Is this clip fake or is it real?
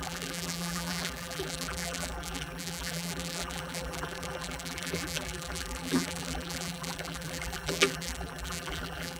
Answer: fake